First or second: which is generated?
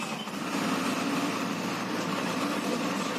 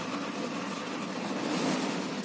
first